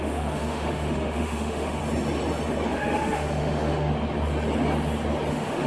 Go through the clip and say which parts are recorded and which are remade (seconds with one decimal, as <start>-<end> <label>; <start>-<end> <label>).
0.0-1.8 remade; 1.8-2.7 recorded; 2.7-3.9 remade; 3.9-5.3 recorded; 5.3-5.7 remade